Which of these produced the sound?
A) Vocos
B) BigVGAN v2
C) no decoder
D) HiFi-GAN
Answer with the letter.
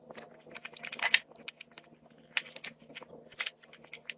C